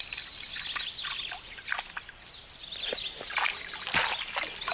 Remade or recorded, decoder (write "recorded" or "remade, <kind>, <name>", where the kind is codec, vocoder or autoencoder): recorded